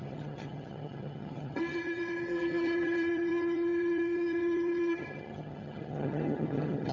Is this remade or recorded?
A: remade